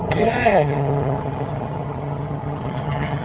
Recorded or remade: remade